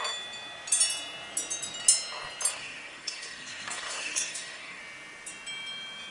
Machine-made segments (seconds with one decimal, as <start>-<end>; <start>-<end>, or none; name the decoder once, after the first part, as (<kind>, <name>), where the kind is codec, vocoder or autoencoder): 2.5-4.8 (codec, SNAC)